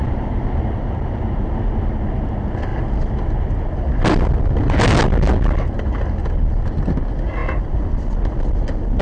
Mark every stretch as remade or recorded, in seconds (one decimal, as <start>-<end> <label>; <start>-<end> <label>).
0.0-9.0 recorded